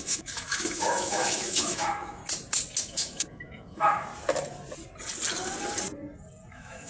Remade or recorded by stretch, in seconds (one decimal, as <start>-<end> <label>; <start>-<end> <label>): 0.0-2.2 remade; 2.2-2.8 recorded; 2.8-4.1 remade; 4.1-6.5 recorded; 6.5-6.9 remade